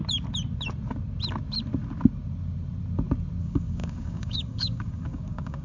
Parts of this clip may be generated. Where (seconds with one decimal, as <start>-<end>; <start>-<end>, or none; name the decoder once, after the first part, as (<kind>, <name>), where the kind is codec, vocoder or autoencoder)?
3.4-5.6 (codec, DAC)

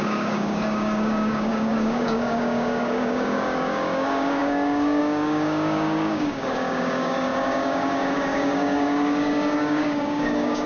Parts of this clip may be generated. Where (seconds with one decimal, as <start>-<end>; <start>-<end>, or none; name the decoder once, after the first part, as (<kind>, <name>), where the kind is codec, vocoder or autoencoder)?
0.0-10.7 (codec, DAC)

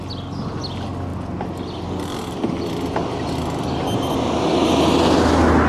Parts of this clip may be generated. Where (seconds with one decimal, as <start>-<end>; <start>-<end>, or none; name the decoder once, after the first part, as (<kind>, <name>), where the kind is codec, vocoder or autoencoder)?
none

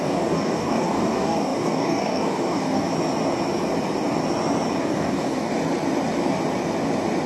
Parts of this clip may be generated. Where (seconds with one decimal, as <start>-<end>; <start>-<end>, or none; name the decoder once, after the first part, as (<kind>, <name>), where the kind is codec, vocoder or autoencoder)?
0.0-2.9 (codec, DAC); 4.8-5.5

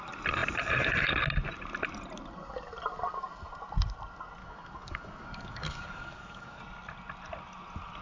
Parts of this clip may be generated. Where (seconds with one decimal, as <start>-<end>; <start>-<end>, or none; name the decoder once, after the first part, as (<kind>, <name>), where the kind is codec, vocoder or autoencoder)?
4.4-6.6 (codec, DAC)